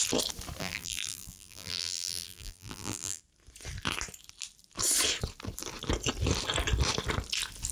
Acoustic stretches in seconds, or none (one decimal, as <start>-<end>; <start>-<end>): 0.0-0.6; 3.2-7.7